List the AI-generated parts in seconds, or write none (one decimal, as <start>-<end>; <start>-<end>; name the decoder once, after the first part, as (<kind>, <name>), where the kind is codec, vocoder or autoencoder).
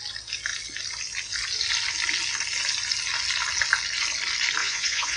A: 4.6-5.2 (vocoder, Vocos)